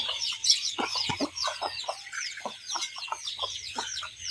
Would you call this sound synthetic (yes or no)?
yes